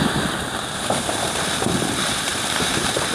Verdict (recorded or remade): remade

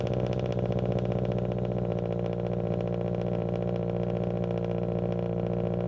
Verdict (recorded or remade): recorded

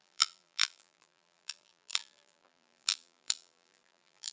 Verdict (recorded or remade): remade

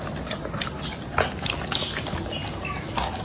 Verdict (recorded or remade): recorded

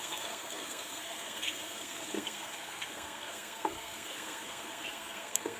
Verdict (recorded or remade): remade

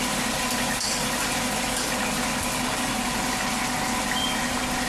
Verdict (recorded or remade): recorded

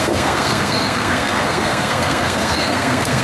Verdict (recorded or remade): remade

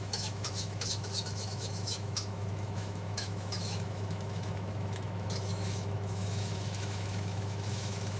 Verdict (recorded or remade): remade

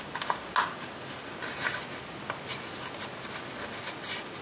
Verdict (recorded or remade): recorded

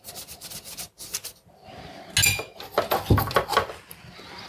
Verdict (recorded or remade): recorded